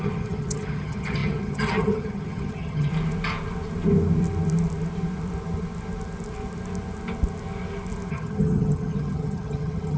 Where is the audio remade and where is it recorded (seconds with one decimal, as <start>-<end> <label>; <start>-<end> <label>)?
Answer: 0.0-2.9 remade; 2.9-8.1 recorded; 8.1-10.0 remade